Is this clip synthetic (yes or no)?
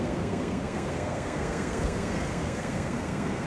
yes